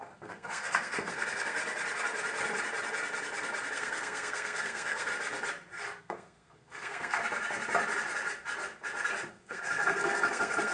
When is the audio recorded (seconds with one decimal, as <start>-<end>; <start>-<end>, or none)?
1.6-3.7; 5.1-6.0; 7.2-9.3